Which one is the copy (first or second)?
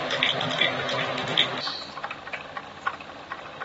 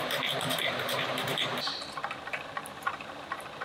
second